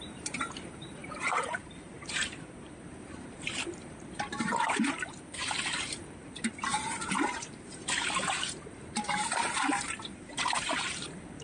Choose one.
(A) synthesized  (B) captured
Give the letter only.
A